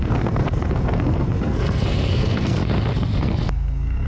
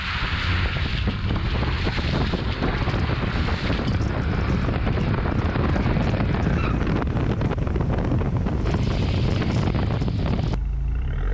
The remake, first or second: first